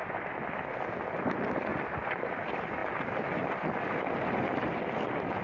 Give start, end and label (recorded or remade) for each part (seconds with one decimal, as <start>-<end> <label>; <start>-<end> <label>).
0.0-5.4 recorded